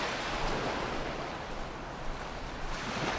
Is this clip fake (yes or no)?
no